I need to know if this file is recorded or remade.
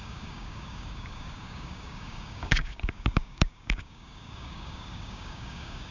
remade